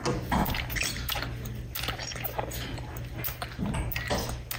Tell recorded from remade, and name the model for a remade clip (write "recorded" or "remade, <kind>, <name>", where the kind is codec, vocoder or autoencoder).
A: recorded